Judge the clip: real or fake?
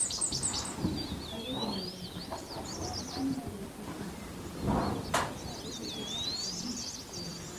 real